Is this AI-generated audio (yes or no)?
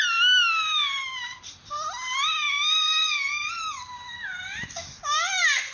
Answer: no